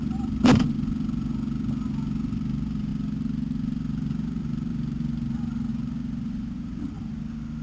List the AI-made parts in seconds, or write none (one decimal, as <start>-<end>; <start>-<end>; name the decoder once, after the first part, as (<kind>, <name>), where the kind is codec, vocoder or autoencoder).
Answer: none